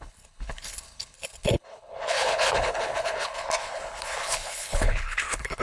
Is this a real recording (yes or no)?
no